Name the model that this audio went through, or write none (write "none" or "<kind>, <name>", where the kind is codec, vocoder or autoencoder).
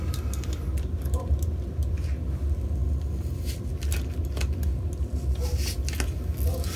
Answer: none